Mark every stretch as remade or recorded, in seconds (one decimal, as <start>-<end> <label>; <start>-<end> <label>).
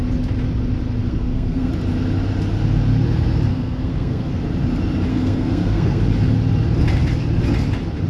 0.0-1.0 recorded; 1.0-1.7 remade; 1.7-3.5 recorded; 3.5-4.4 remade; 4.4-5.1 recorded; 5.1-6.0 remade; 6.0-8.1 recorded